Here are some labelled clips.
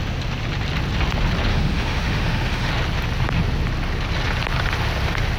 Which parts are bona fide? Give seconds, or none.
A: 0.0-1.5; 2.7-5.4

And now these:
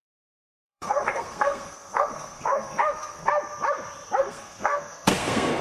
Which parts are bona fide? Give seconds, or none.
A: 3.3-4.2

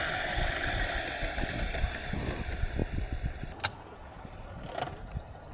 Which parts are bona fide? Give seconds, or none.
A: 0.0-5.5

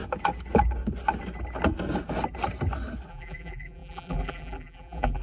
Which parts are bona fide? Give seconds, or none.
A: 0.0-3.1